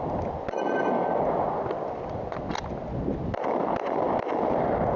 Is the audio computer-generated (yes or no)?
no